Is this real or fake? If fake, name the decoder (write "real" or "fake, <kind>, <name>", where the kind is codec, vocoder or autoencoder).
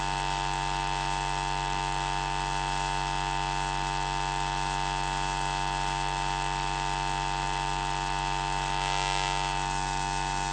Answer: real